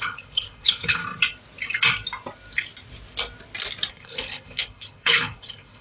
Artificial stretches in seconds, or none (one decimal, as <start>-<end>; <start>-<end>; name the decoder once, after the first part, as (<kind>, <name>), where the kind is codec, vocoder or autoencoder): 0.0-1.0 (codec, HILCodec); 3.9-5.8